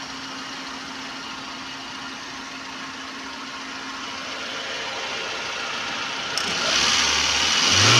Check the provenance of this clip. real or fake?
real